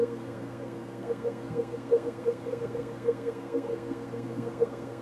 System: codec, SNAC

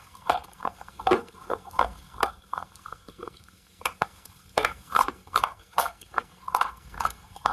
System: codec, SNAC